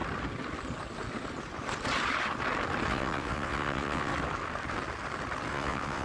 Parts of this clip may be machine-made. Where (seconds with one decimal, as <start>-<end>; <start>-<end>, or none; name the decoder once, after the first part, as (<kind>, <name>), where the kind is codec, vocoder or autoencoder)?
2.9-4.1 (vocoder, WaveNeXt); 5.5-6.0